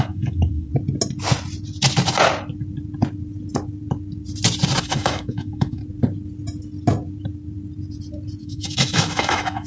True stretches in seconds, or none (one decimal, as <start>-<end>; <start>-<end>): 0.7-4.8; 5.8-8.4